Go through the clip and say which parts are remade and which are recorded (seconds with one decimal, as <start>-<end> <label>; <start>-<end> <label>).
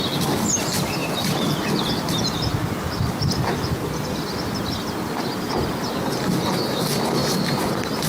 0.0-1.0 recorded; 1.0-2.3 remade; 2.3-8.1 recorded